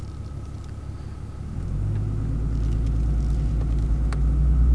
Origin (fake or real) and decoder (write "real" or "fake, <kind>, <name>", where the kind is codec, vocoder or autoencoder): real